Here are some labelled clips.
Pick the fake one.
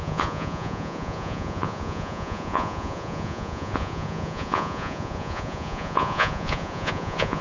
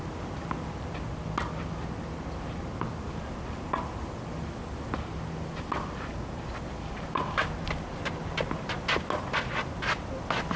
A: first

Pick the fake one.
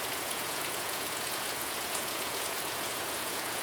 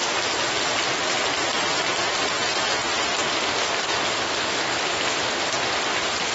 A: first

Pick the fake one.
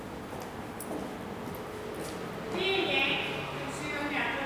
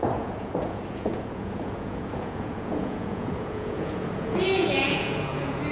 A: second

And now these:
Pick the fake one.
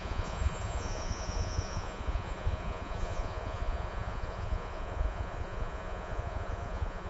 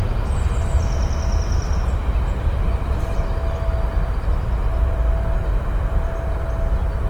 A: first